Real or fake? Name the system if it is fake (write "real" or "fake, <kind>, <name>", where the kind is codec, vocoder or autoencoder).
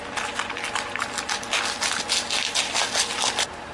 real